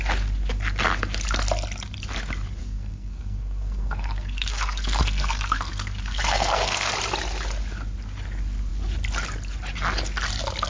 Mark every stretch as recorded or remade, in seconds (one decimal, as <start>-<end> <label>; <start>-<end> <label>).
0.0-2.6 recorded; 2.6-6.9 remade; 6.9-10.7 recorded

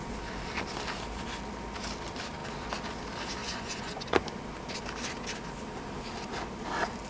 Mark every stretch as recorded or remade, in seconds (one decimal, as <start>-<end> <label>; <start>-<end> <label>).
0.0-3.4 recorded; 3.4-4.2 remade; 4.2-7.1 recorded

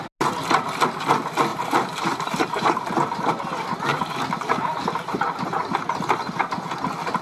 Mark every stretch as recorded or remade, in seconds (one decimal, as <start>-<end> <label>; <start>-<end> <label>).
0.0-1.5 recorded; 1.5-3.3 remade; 3.3-7.2 recorded

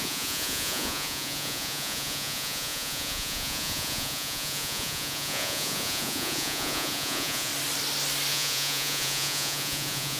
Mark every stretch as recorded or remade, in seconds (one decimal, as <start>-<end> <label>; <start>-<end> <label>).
0.0-7.5 remade; 7.5-8.3 recorded; 8.3-10.2 remade

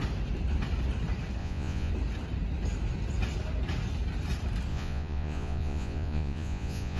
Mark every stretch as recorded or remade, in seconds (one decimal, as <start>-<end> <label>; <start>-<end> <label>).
0.0-1.4 recorded; 1.4-1.9 remade; 1.9-4.7 recorded; 4.7-7.0 remade

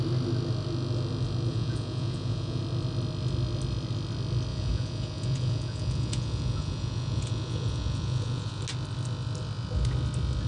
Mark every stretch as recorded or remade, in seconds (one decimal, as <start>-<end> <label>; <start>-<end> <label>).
0.0-1.5 recorded; 1.5-2.6 remade; 2.6-4.5 recorded; 4.5-8.6 remade; 8.6-10.5 recorded

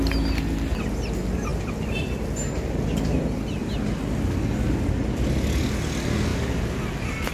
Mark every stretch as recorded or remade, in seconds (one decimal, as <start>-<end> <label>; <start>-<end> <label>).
0.0-7.3 recorded